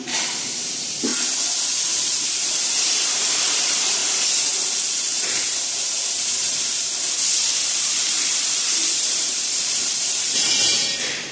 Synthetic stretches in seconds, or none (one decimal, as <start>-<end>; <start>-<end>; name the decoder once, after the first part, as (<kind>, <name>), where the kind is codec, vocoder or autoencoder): 0.0-1.1 (vocoder, BigVGAN v2); 1.9-4.0; 7.9-11.3